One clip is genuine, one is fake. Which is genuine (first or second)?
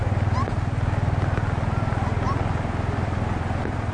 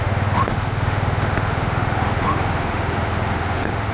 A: first